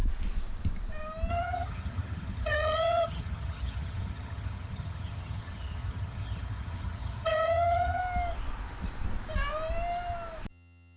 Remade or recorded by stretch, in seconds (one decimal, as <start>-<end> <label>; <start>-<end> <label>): 0.0-1.3 recorded; 1.3-8.0 remade; 8.0-10.5 recorded; 10.5-11.0 remade